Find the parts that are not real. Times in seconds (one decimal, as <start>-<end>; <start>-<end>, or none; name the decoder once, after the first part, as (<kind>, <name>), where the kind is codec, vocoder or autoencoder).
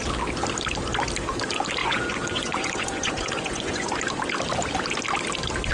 1.8-4.0 (vocoder, Vocos)